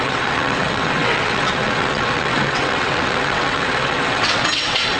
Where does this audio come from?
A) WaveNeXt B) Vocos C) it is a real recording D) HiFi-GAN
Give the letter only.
A